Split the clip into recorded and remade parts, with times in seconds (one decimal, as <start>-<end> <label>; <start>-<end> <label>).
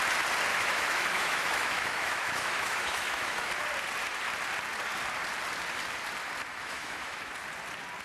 0.0-0.5 recorded; 0.5-3.5 remade; 3.5-6.5 recorded; 6.5-7.3 remade; 7.3-8.0 recorded